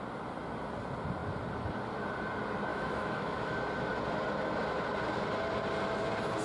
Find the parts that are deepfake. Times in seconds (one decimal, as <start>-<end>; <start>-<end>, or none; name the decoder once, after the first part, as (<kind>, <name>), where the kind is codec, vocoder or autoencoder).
2.7-3.5 (autoencoder, DAC-VAE)